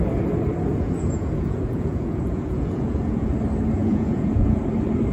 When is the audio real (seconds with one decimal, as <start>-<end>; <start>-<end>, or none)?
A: 0.0-0.7; 3.3-3.8; 4.6-5.1